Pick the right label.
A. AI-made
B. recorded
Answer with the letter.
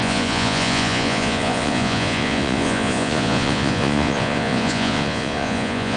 A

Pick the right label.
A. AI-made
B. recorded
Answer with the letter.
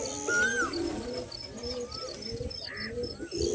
B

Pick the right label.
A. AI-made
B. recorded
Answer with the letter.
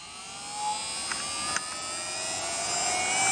B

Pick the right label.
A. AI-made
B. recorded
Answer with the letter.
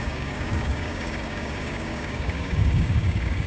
A